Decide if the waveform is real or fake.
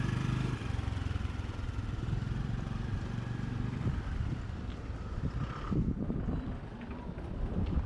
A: fake